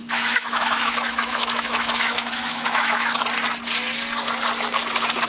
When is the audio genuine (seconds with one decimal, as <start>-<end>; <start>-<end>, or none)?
3.2-5.3

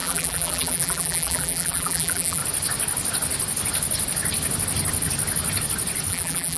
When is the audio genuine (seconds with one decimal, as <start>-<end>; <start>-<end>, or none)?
2.4-6.1

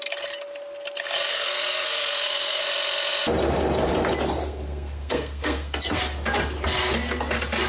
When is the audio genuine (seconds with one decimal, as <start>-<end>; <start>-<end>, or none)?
0.0-1.3; 2.6-4.4; 6.0-7.7

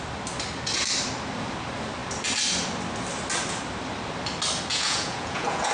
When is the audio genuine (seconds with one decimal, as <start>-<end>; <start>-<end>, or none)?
0.0-4.7